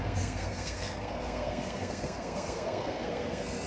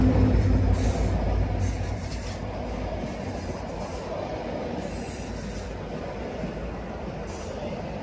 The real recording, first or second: second